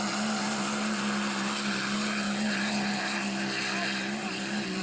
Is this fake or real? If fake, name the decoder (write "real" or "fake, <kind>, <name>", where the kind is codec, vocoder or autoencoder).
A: real